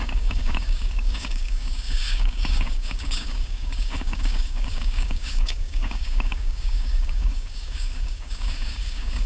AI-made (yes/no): yes